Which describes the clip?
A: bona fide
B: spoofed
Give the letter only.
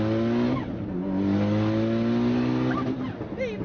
A